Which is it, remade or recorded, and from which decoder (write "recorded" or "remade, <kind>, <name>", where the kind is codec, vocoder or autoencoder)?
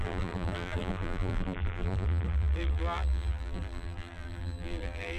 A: remade, vocoder, BigVGAN v2